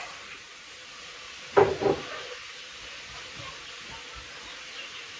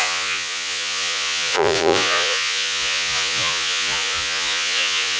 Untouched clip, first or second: first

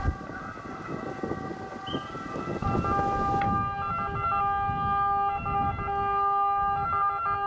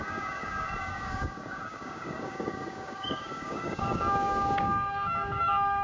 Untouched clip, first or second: first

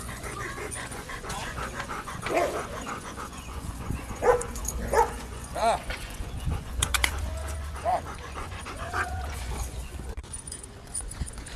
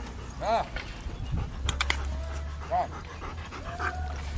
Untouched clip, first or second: second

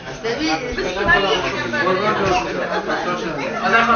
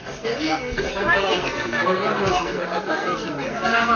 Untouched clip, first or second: first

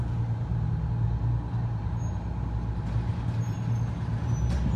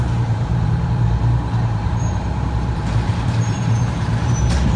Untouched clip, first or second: first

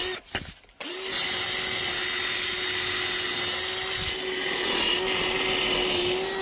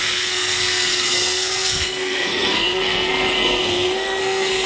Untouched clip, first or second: first